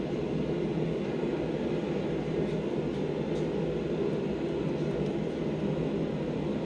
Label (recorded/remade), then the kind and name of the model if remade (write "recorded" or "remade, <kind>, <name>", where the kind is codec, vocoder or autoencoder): recorded